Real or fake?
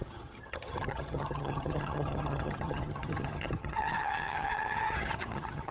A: fake